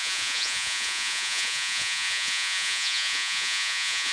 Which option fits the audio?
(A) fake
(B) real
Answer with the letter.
A